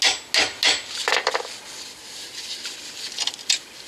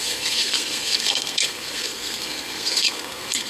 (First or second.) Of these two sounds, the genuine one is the first